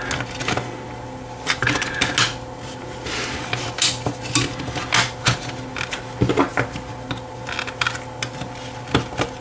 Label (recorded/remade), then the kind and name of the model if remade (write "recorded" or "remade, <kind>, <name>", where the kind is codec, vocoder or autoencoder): recorded